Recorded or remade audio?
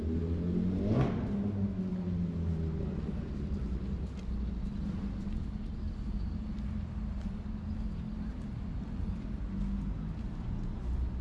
recorded